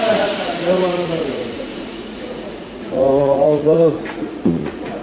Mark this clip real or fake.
fake